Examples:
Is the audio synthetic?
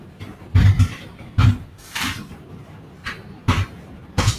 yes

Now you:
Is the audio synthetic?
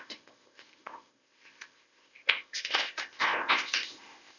yes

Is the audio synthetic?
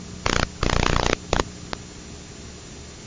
no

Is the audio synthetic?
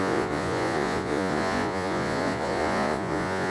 yes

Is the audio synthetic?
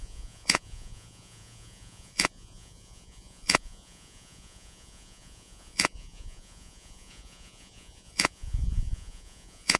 yes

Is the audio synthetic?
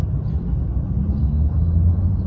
no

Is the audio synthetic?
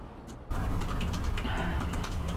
no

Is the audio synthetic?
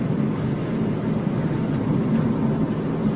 no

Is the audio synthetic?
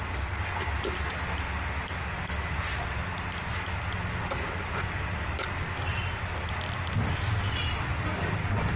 no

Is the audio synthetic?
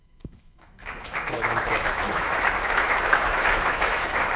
yes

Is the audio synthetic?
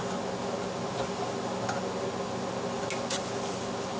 no